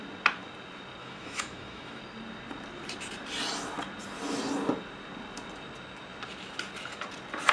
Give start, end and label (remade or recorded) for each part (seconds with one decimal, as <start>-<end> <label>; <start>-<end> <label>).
0.0-1.0 recorded; 1.0-2.0 remade; 2.0-7.5 recorded